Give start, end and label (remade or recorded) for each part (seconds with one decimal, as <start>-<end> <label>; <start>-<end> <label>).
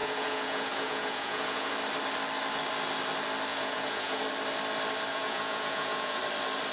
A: 0.0-1.7 remade; 1.7-3.5 recorded; 3.5-4.2 remade; 4.2-5.1 recorded; 5.1-6.2 remade; 6.2-6.7 recorded